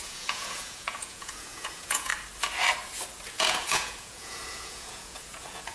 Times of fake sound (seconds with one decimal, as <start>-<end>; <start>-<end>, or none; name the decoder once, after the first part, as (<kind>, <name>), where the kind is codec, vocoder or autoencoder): 0.0-2.1 (vocoder, Vocos); 3.3-5.7